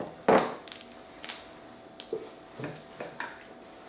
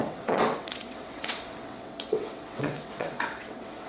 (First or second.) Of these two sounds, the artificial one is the second